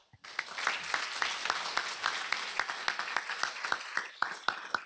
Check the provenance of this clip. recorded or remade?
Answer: recorded